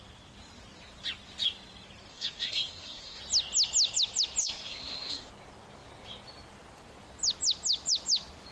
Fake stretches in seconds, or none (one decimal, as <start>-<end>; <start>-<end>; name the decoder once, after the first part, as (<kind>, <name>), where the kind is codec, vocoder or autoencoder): 2.1-3.2 (codec, SNAC); 4.4-5.3